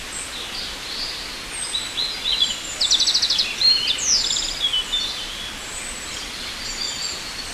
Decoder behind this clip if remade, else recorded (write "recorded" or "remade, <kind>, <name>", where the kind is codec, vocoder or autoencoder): recorded